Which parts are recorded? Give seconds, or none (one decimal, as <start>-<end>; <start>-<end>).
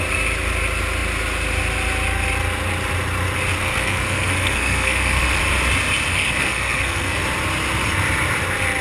0.0-3.6; 5.4-6.1; 7.2-8.8